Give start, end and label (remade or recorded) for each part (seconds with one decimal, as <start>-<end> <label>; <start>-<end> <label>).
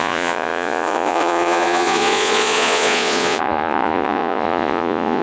0.0-5.2 remade